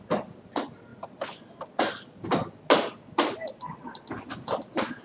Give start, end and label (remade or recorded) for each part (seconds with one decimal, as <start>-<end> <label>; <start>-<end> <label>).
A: 0.0-5.0 recorded